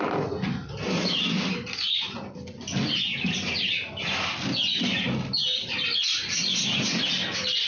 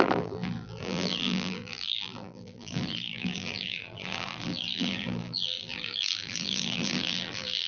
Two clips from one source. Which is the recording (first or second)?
first